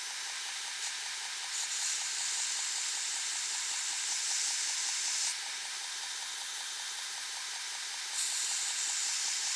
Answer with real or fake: real